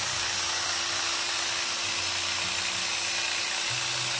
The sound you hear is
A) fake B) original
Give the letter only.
B